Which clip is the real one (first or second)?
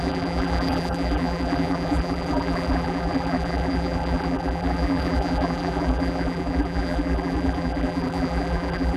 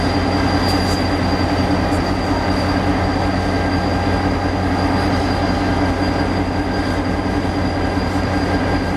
second